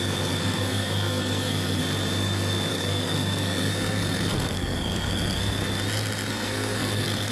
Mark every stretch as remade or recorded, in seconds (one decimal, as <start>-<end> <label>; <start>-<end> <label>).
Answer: 0.0-1.8 remade; 1.8-2.7 recorded; 2.7-5.6 remade; 5.6-6.3 recorded; 6.3-7.3 remade